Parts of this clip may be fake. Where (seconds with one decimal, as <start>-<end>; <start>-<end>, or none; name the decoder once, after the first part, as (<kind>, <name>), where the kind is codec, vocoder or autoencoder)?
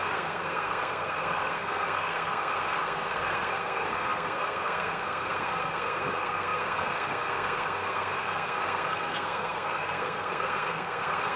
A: 0.0-11.4 (codec, SNAC)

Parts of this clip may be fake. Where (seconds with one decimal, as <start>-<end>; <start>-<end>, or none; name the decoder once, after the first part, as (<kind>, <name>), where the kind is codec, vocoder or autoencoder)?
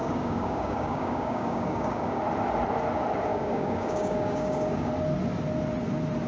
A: 0.0-2.2 (codec, DAC); 3.3-4.9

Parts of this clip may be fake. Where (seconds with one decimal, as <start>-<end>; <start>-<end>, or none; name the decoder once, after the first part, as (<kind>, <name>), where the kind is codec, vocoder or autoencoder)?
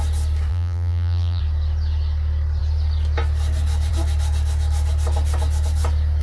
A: 0.5-1.4 (vocoder, BigVGAN v2)